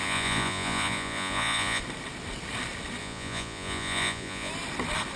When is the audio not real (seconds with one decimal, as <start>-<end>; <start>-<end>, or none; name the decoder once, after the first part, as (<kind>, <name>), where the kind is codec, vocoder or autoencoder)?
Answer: 0.0-1.8 (vocoder, Vocos); 3.0-4.5